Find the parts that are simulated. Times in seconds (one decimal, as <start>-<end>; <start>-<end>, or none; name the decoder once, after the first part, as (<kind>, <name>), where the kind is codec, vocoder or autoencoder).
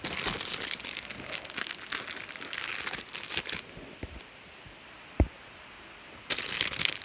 none